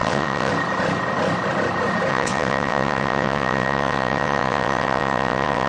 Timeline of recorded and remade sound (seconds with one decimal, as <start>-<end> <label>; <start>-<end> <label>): 0.0-0.5 remade; 0.5-2.1 recorded; 2.1-5.7 remade